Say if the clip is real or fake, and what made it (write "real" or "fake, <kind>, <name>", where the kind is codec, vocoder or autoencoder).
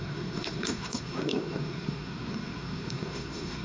fake, codec, SNAC